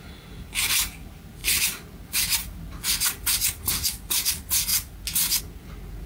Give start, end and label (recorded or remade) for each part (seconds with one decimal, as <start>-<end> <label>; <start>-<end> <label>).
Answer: 0.0-6.1 recorded